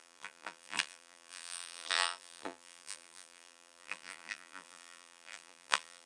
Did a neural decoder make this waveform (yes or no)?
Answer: yes